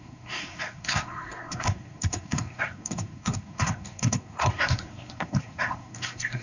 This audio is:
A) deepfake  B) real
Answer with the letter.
A